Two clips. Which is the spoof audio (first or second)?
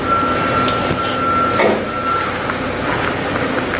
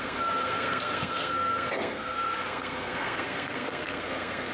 second